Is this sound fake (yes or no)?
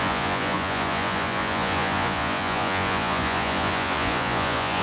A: yes